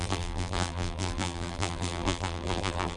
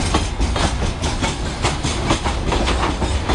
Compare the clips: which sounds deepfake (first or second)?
first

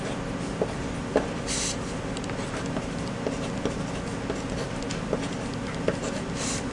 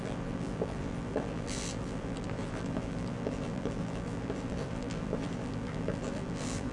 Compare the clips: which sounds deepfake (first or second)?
second